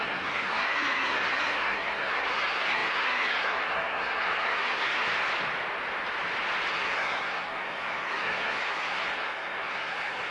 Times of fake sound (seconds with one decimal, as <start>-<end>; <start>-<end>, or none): 0.0-5.1; 6.7-10.3